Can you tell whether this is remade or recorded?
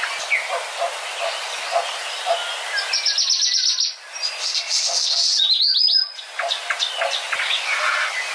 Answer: recorded